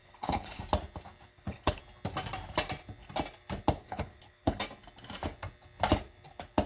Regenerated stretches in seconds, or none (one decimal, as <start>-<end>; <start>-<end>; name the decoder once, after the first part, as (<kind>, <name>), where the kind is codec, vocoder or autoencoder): 0.0-0.6 (codec, HILCodec); 1.3-1.8; 3.8-4.6